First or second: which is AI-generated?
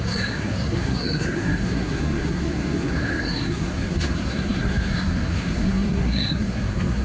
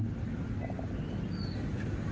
first